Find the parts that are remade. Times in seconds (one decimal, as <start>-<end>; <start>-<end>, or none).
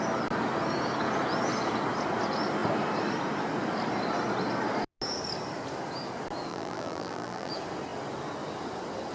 6.5-7.5